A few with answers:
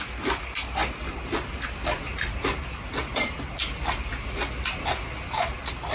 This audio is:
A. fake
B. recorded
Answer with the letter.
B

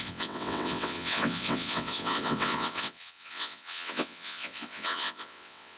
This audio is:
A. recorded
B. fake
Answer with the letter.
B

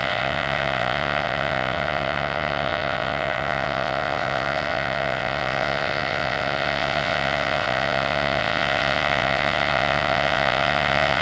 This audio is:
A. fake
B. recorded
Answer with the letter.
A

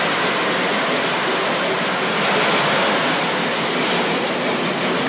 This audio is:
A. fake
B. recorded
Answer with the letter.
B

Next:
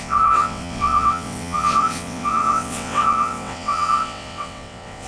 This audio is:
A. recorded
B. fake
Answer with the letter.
B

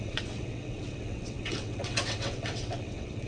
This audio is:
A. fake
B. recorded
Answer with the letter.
A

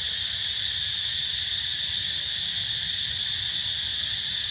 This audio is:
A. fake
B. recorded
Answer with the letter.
B